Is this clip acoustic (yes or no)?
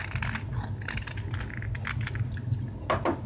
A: yes